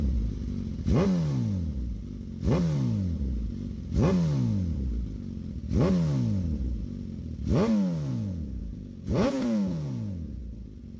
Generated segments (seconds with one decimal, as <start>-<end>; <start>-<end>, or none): 8.1-10.4